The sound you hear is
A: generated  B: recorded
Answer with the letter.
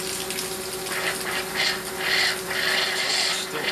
B